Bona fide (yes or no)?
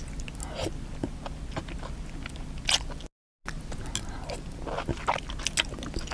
yes